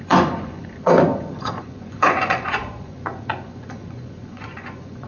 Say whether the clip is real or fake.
fake